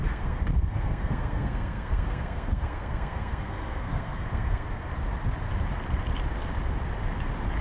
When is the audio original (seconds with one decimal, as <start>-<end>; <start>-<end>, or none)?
4.9-7.6